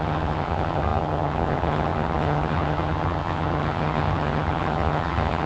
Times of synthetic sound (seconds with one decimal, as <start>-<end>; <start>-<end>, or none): 0.0-5.5